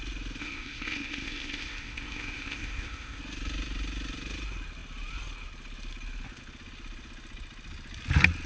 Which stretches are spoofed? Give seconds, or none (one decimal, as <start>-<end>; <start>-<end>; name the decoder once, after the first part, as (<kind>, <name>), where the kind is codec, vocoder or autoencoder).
0.4-3.2 (codec, ZipCodec)